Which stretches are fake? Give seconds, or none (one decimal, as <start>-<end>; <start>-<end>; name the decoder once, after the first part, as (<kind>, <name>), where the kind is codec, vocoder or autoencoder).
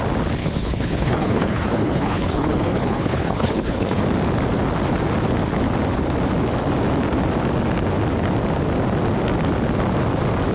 0.4-4.0 (codec, HILCodec)